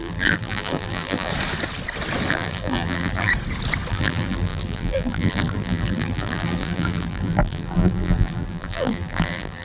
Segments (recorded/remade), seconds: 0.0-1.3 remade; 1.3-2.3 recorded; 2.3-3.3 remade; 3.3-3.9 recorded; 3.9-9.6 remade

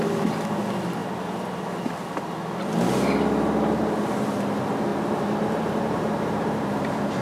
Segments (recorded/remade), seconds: 0.0-4.9 recorded; 4.9-7.2 remade

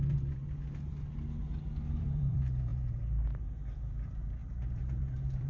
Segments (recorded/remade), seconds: 0.0-0.4 remade; 0.4-2.0 recorded; 2.0-5.5 remade

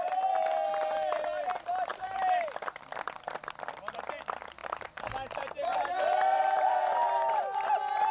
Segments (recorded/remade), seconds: 0.0-1.9 recorded; 1.9-2.6 remade; 2.6-4.6 recorded; 4.6-7.4 remade; 7.4-8.1 recorded